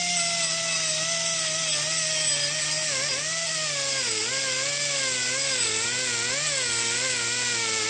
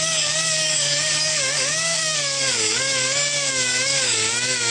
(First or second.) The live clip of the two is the first